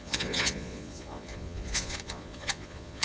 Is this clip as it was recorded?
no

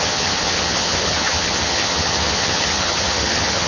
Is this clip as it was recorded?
no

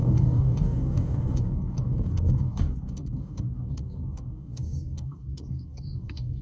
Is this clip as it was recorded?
no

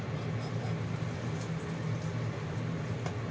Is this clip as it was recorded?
yes